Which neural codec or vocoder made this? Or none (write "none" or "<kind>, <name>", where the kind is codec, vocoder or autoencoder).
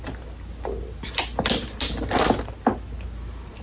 none